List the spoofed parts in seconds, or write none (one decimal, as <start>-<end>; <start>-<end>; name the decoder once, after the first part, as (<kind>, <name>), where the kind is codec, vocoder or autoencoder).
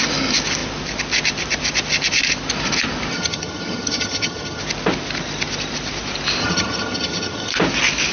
3.1-4.6 (vocoder, HiFi-GAN); 6.4-7.5